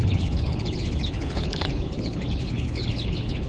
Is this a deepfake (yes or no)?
yes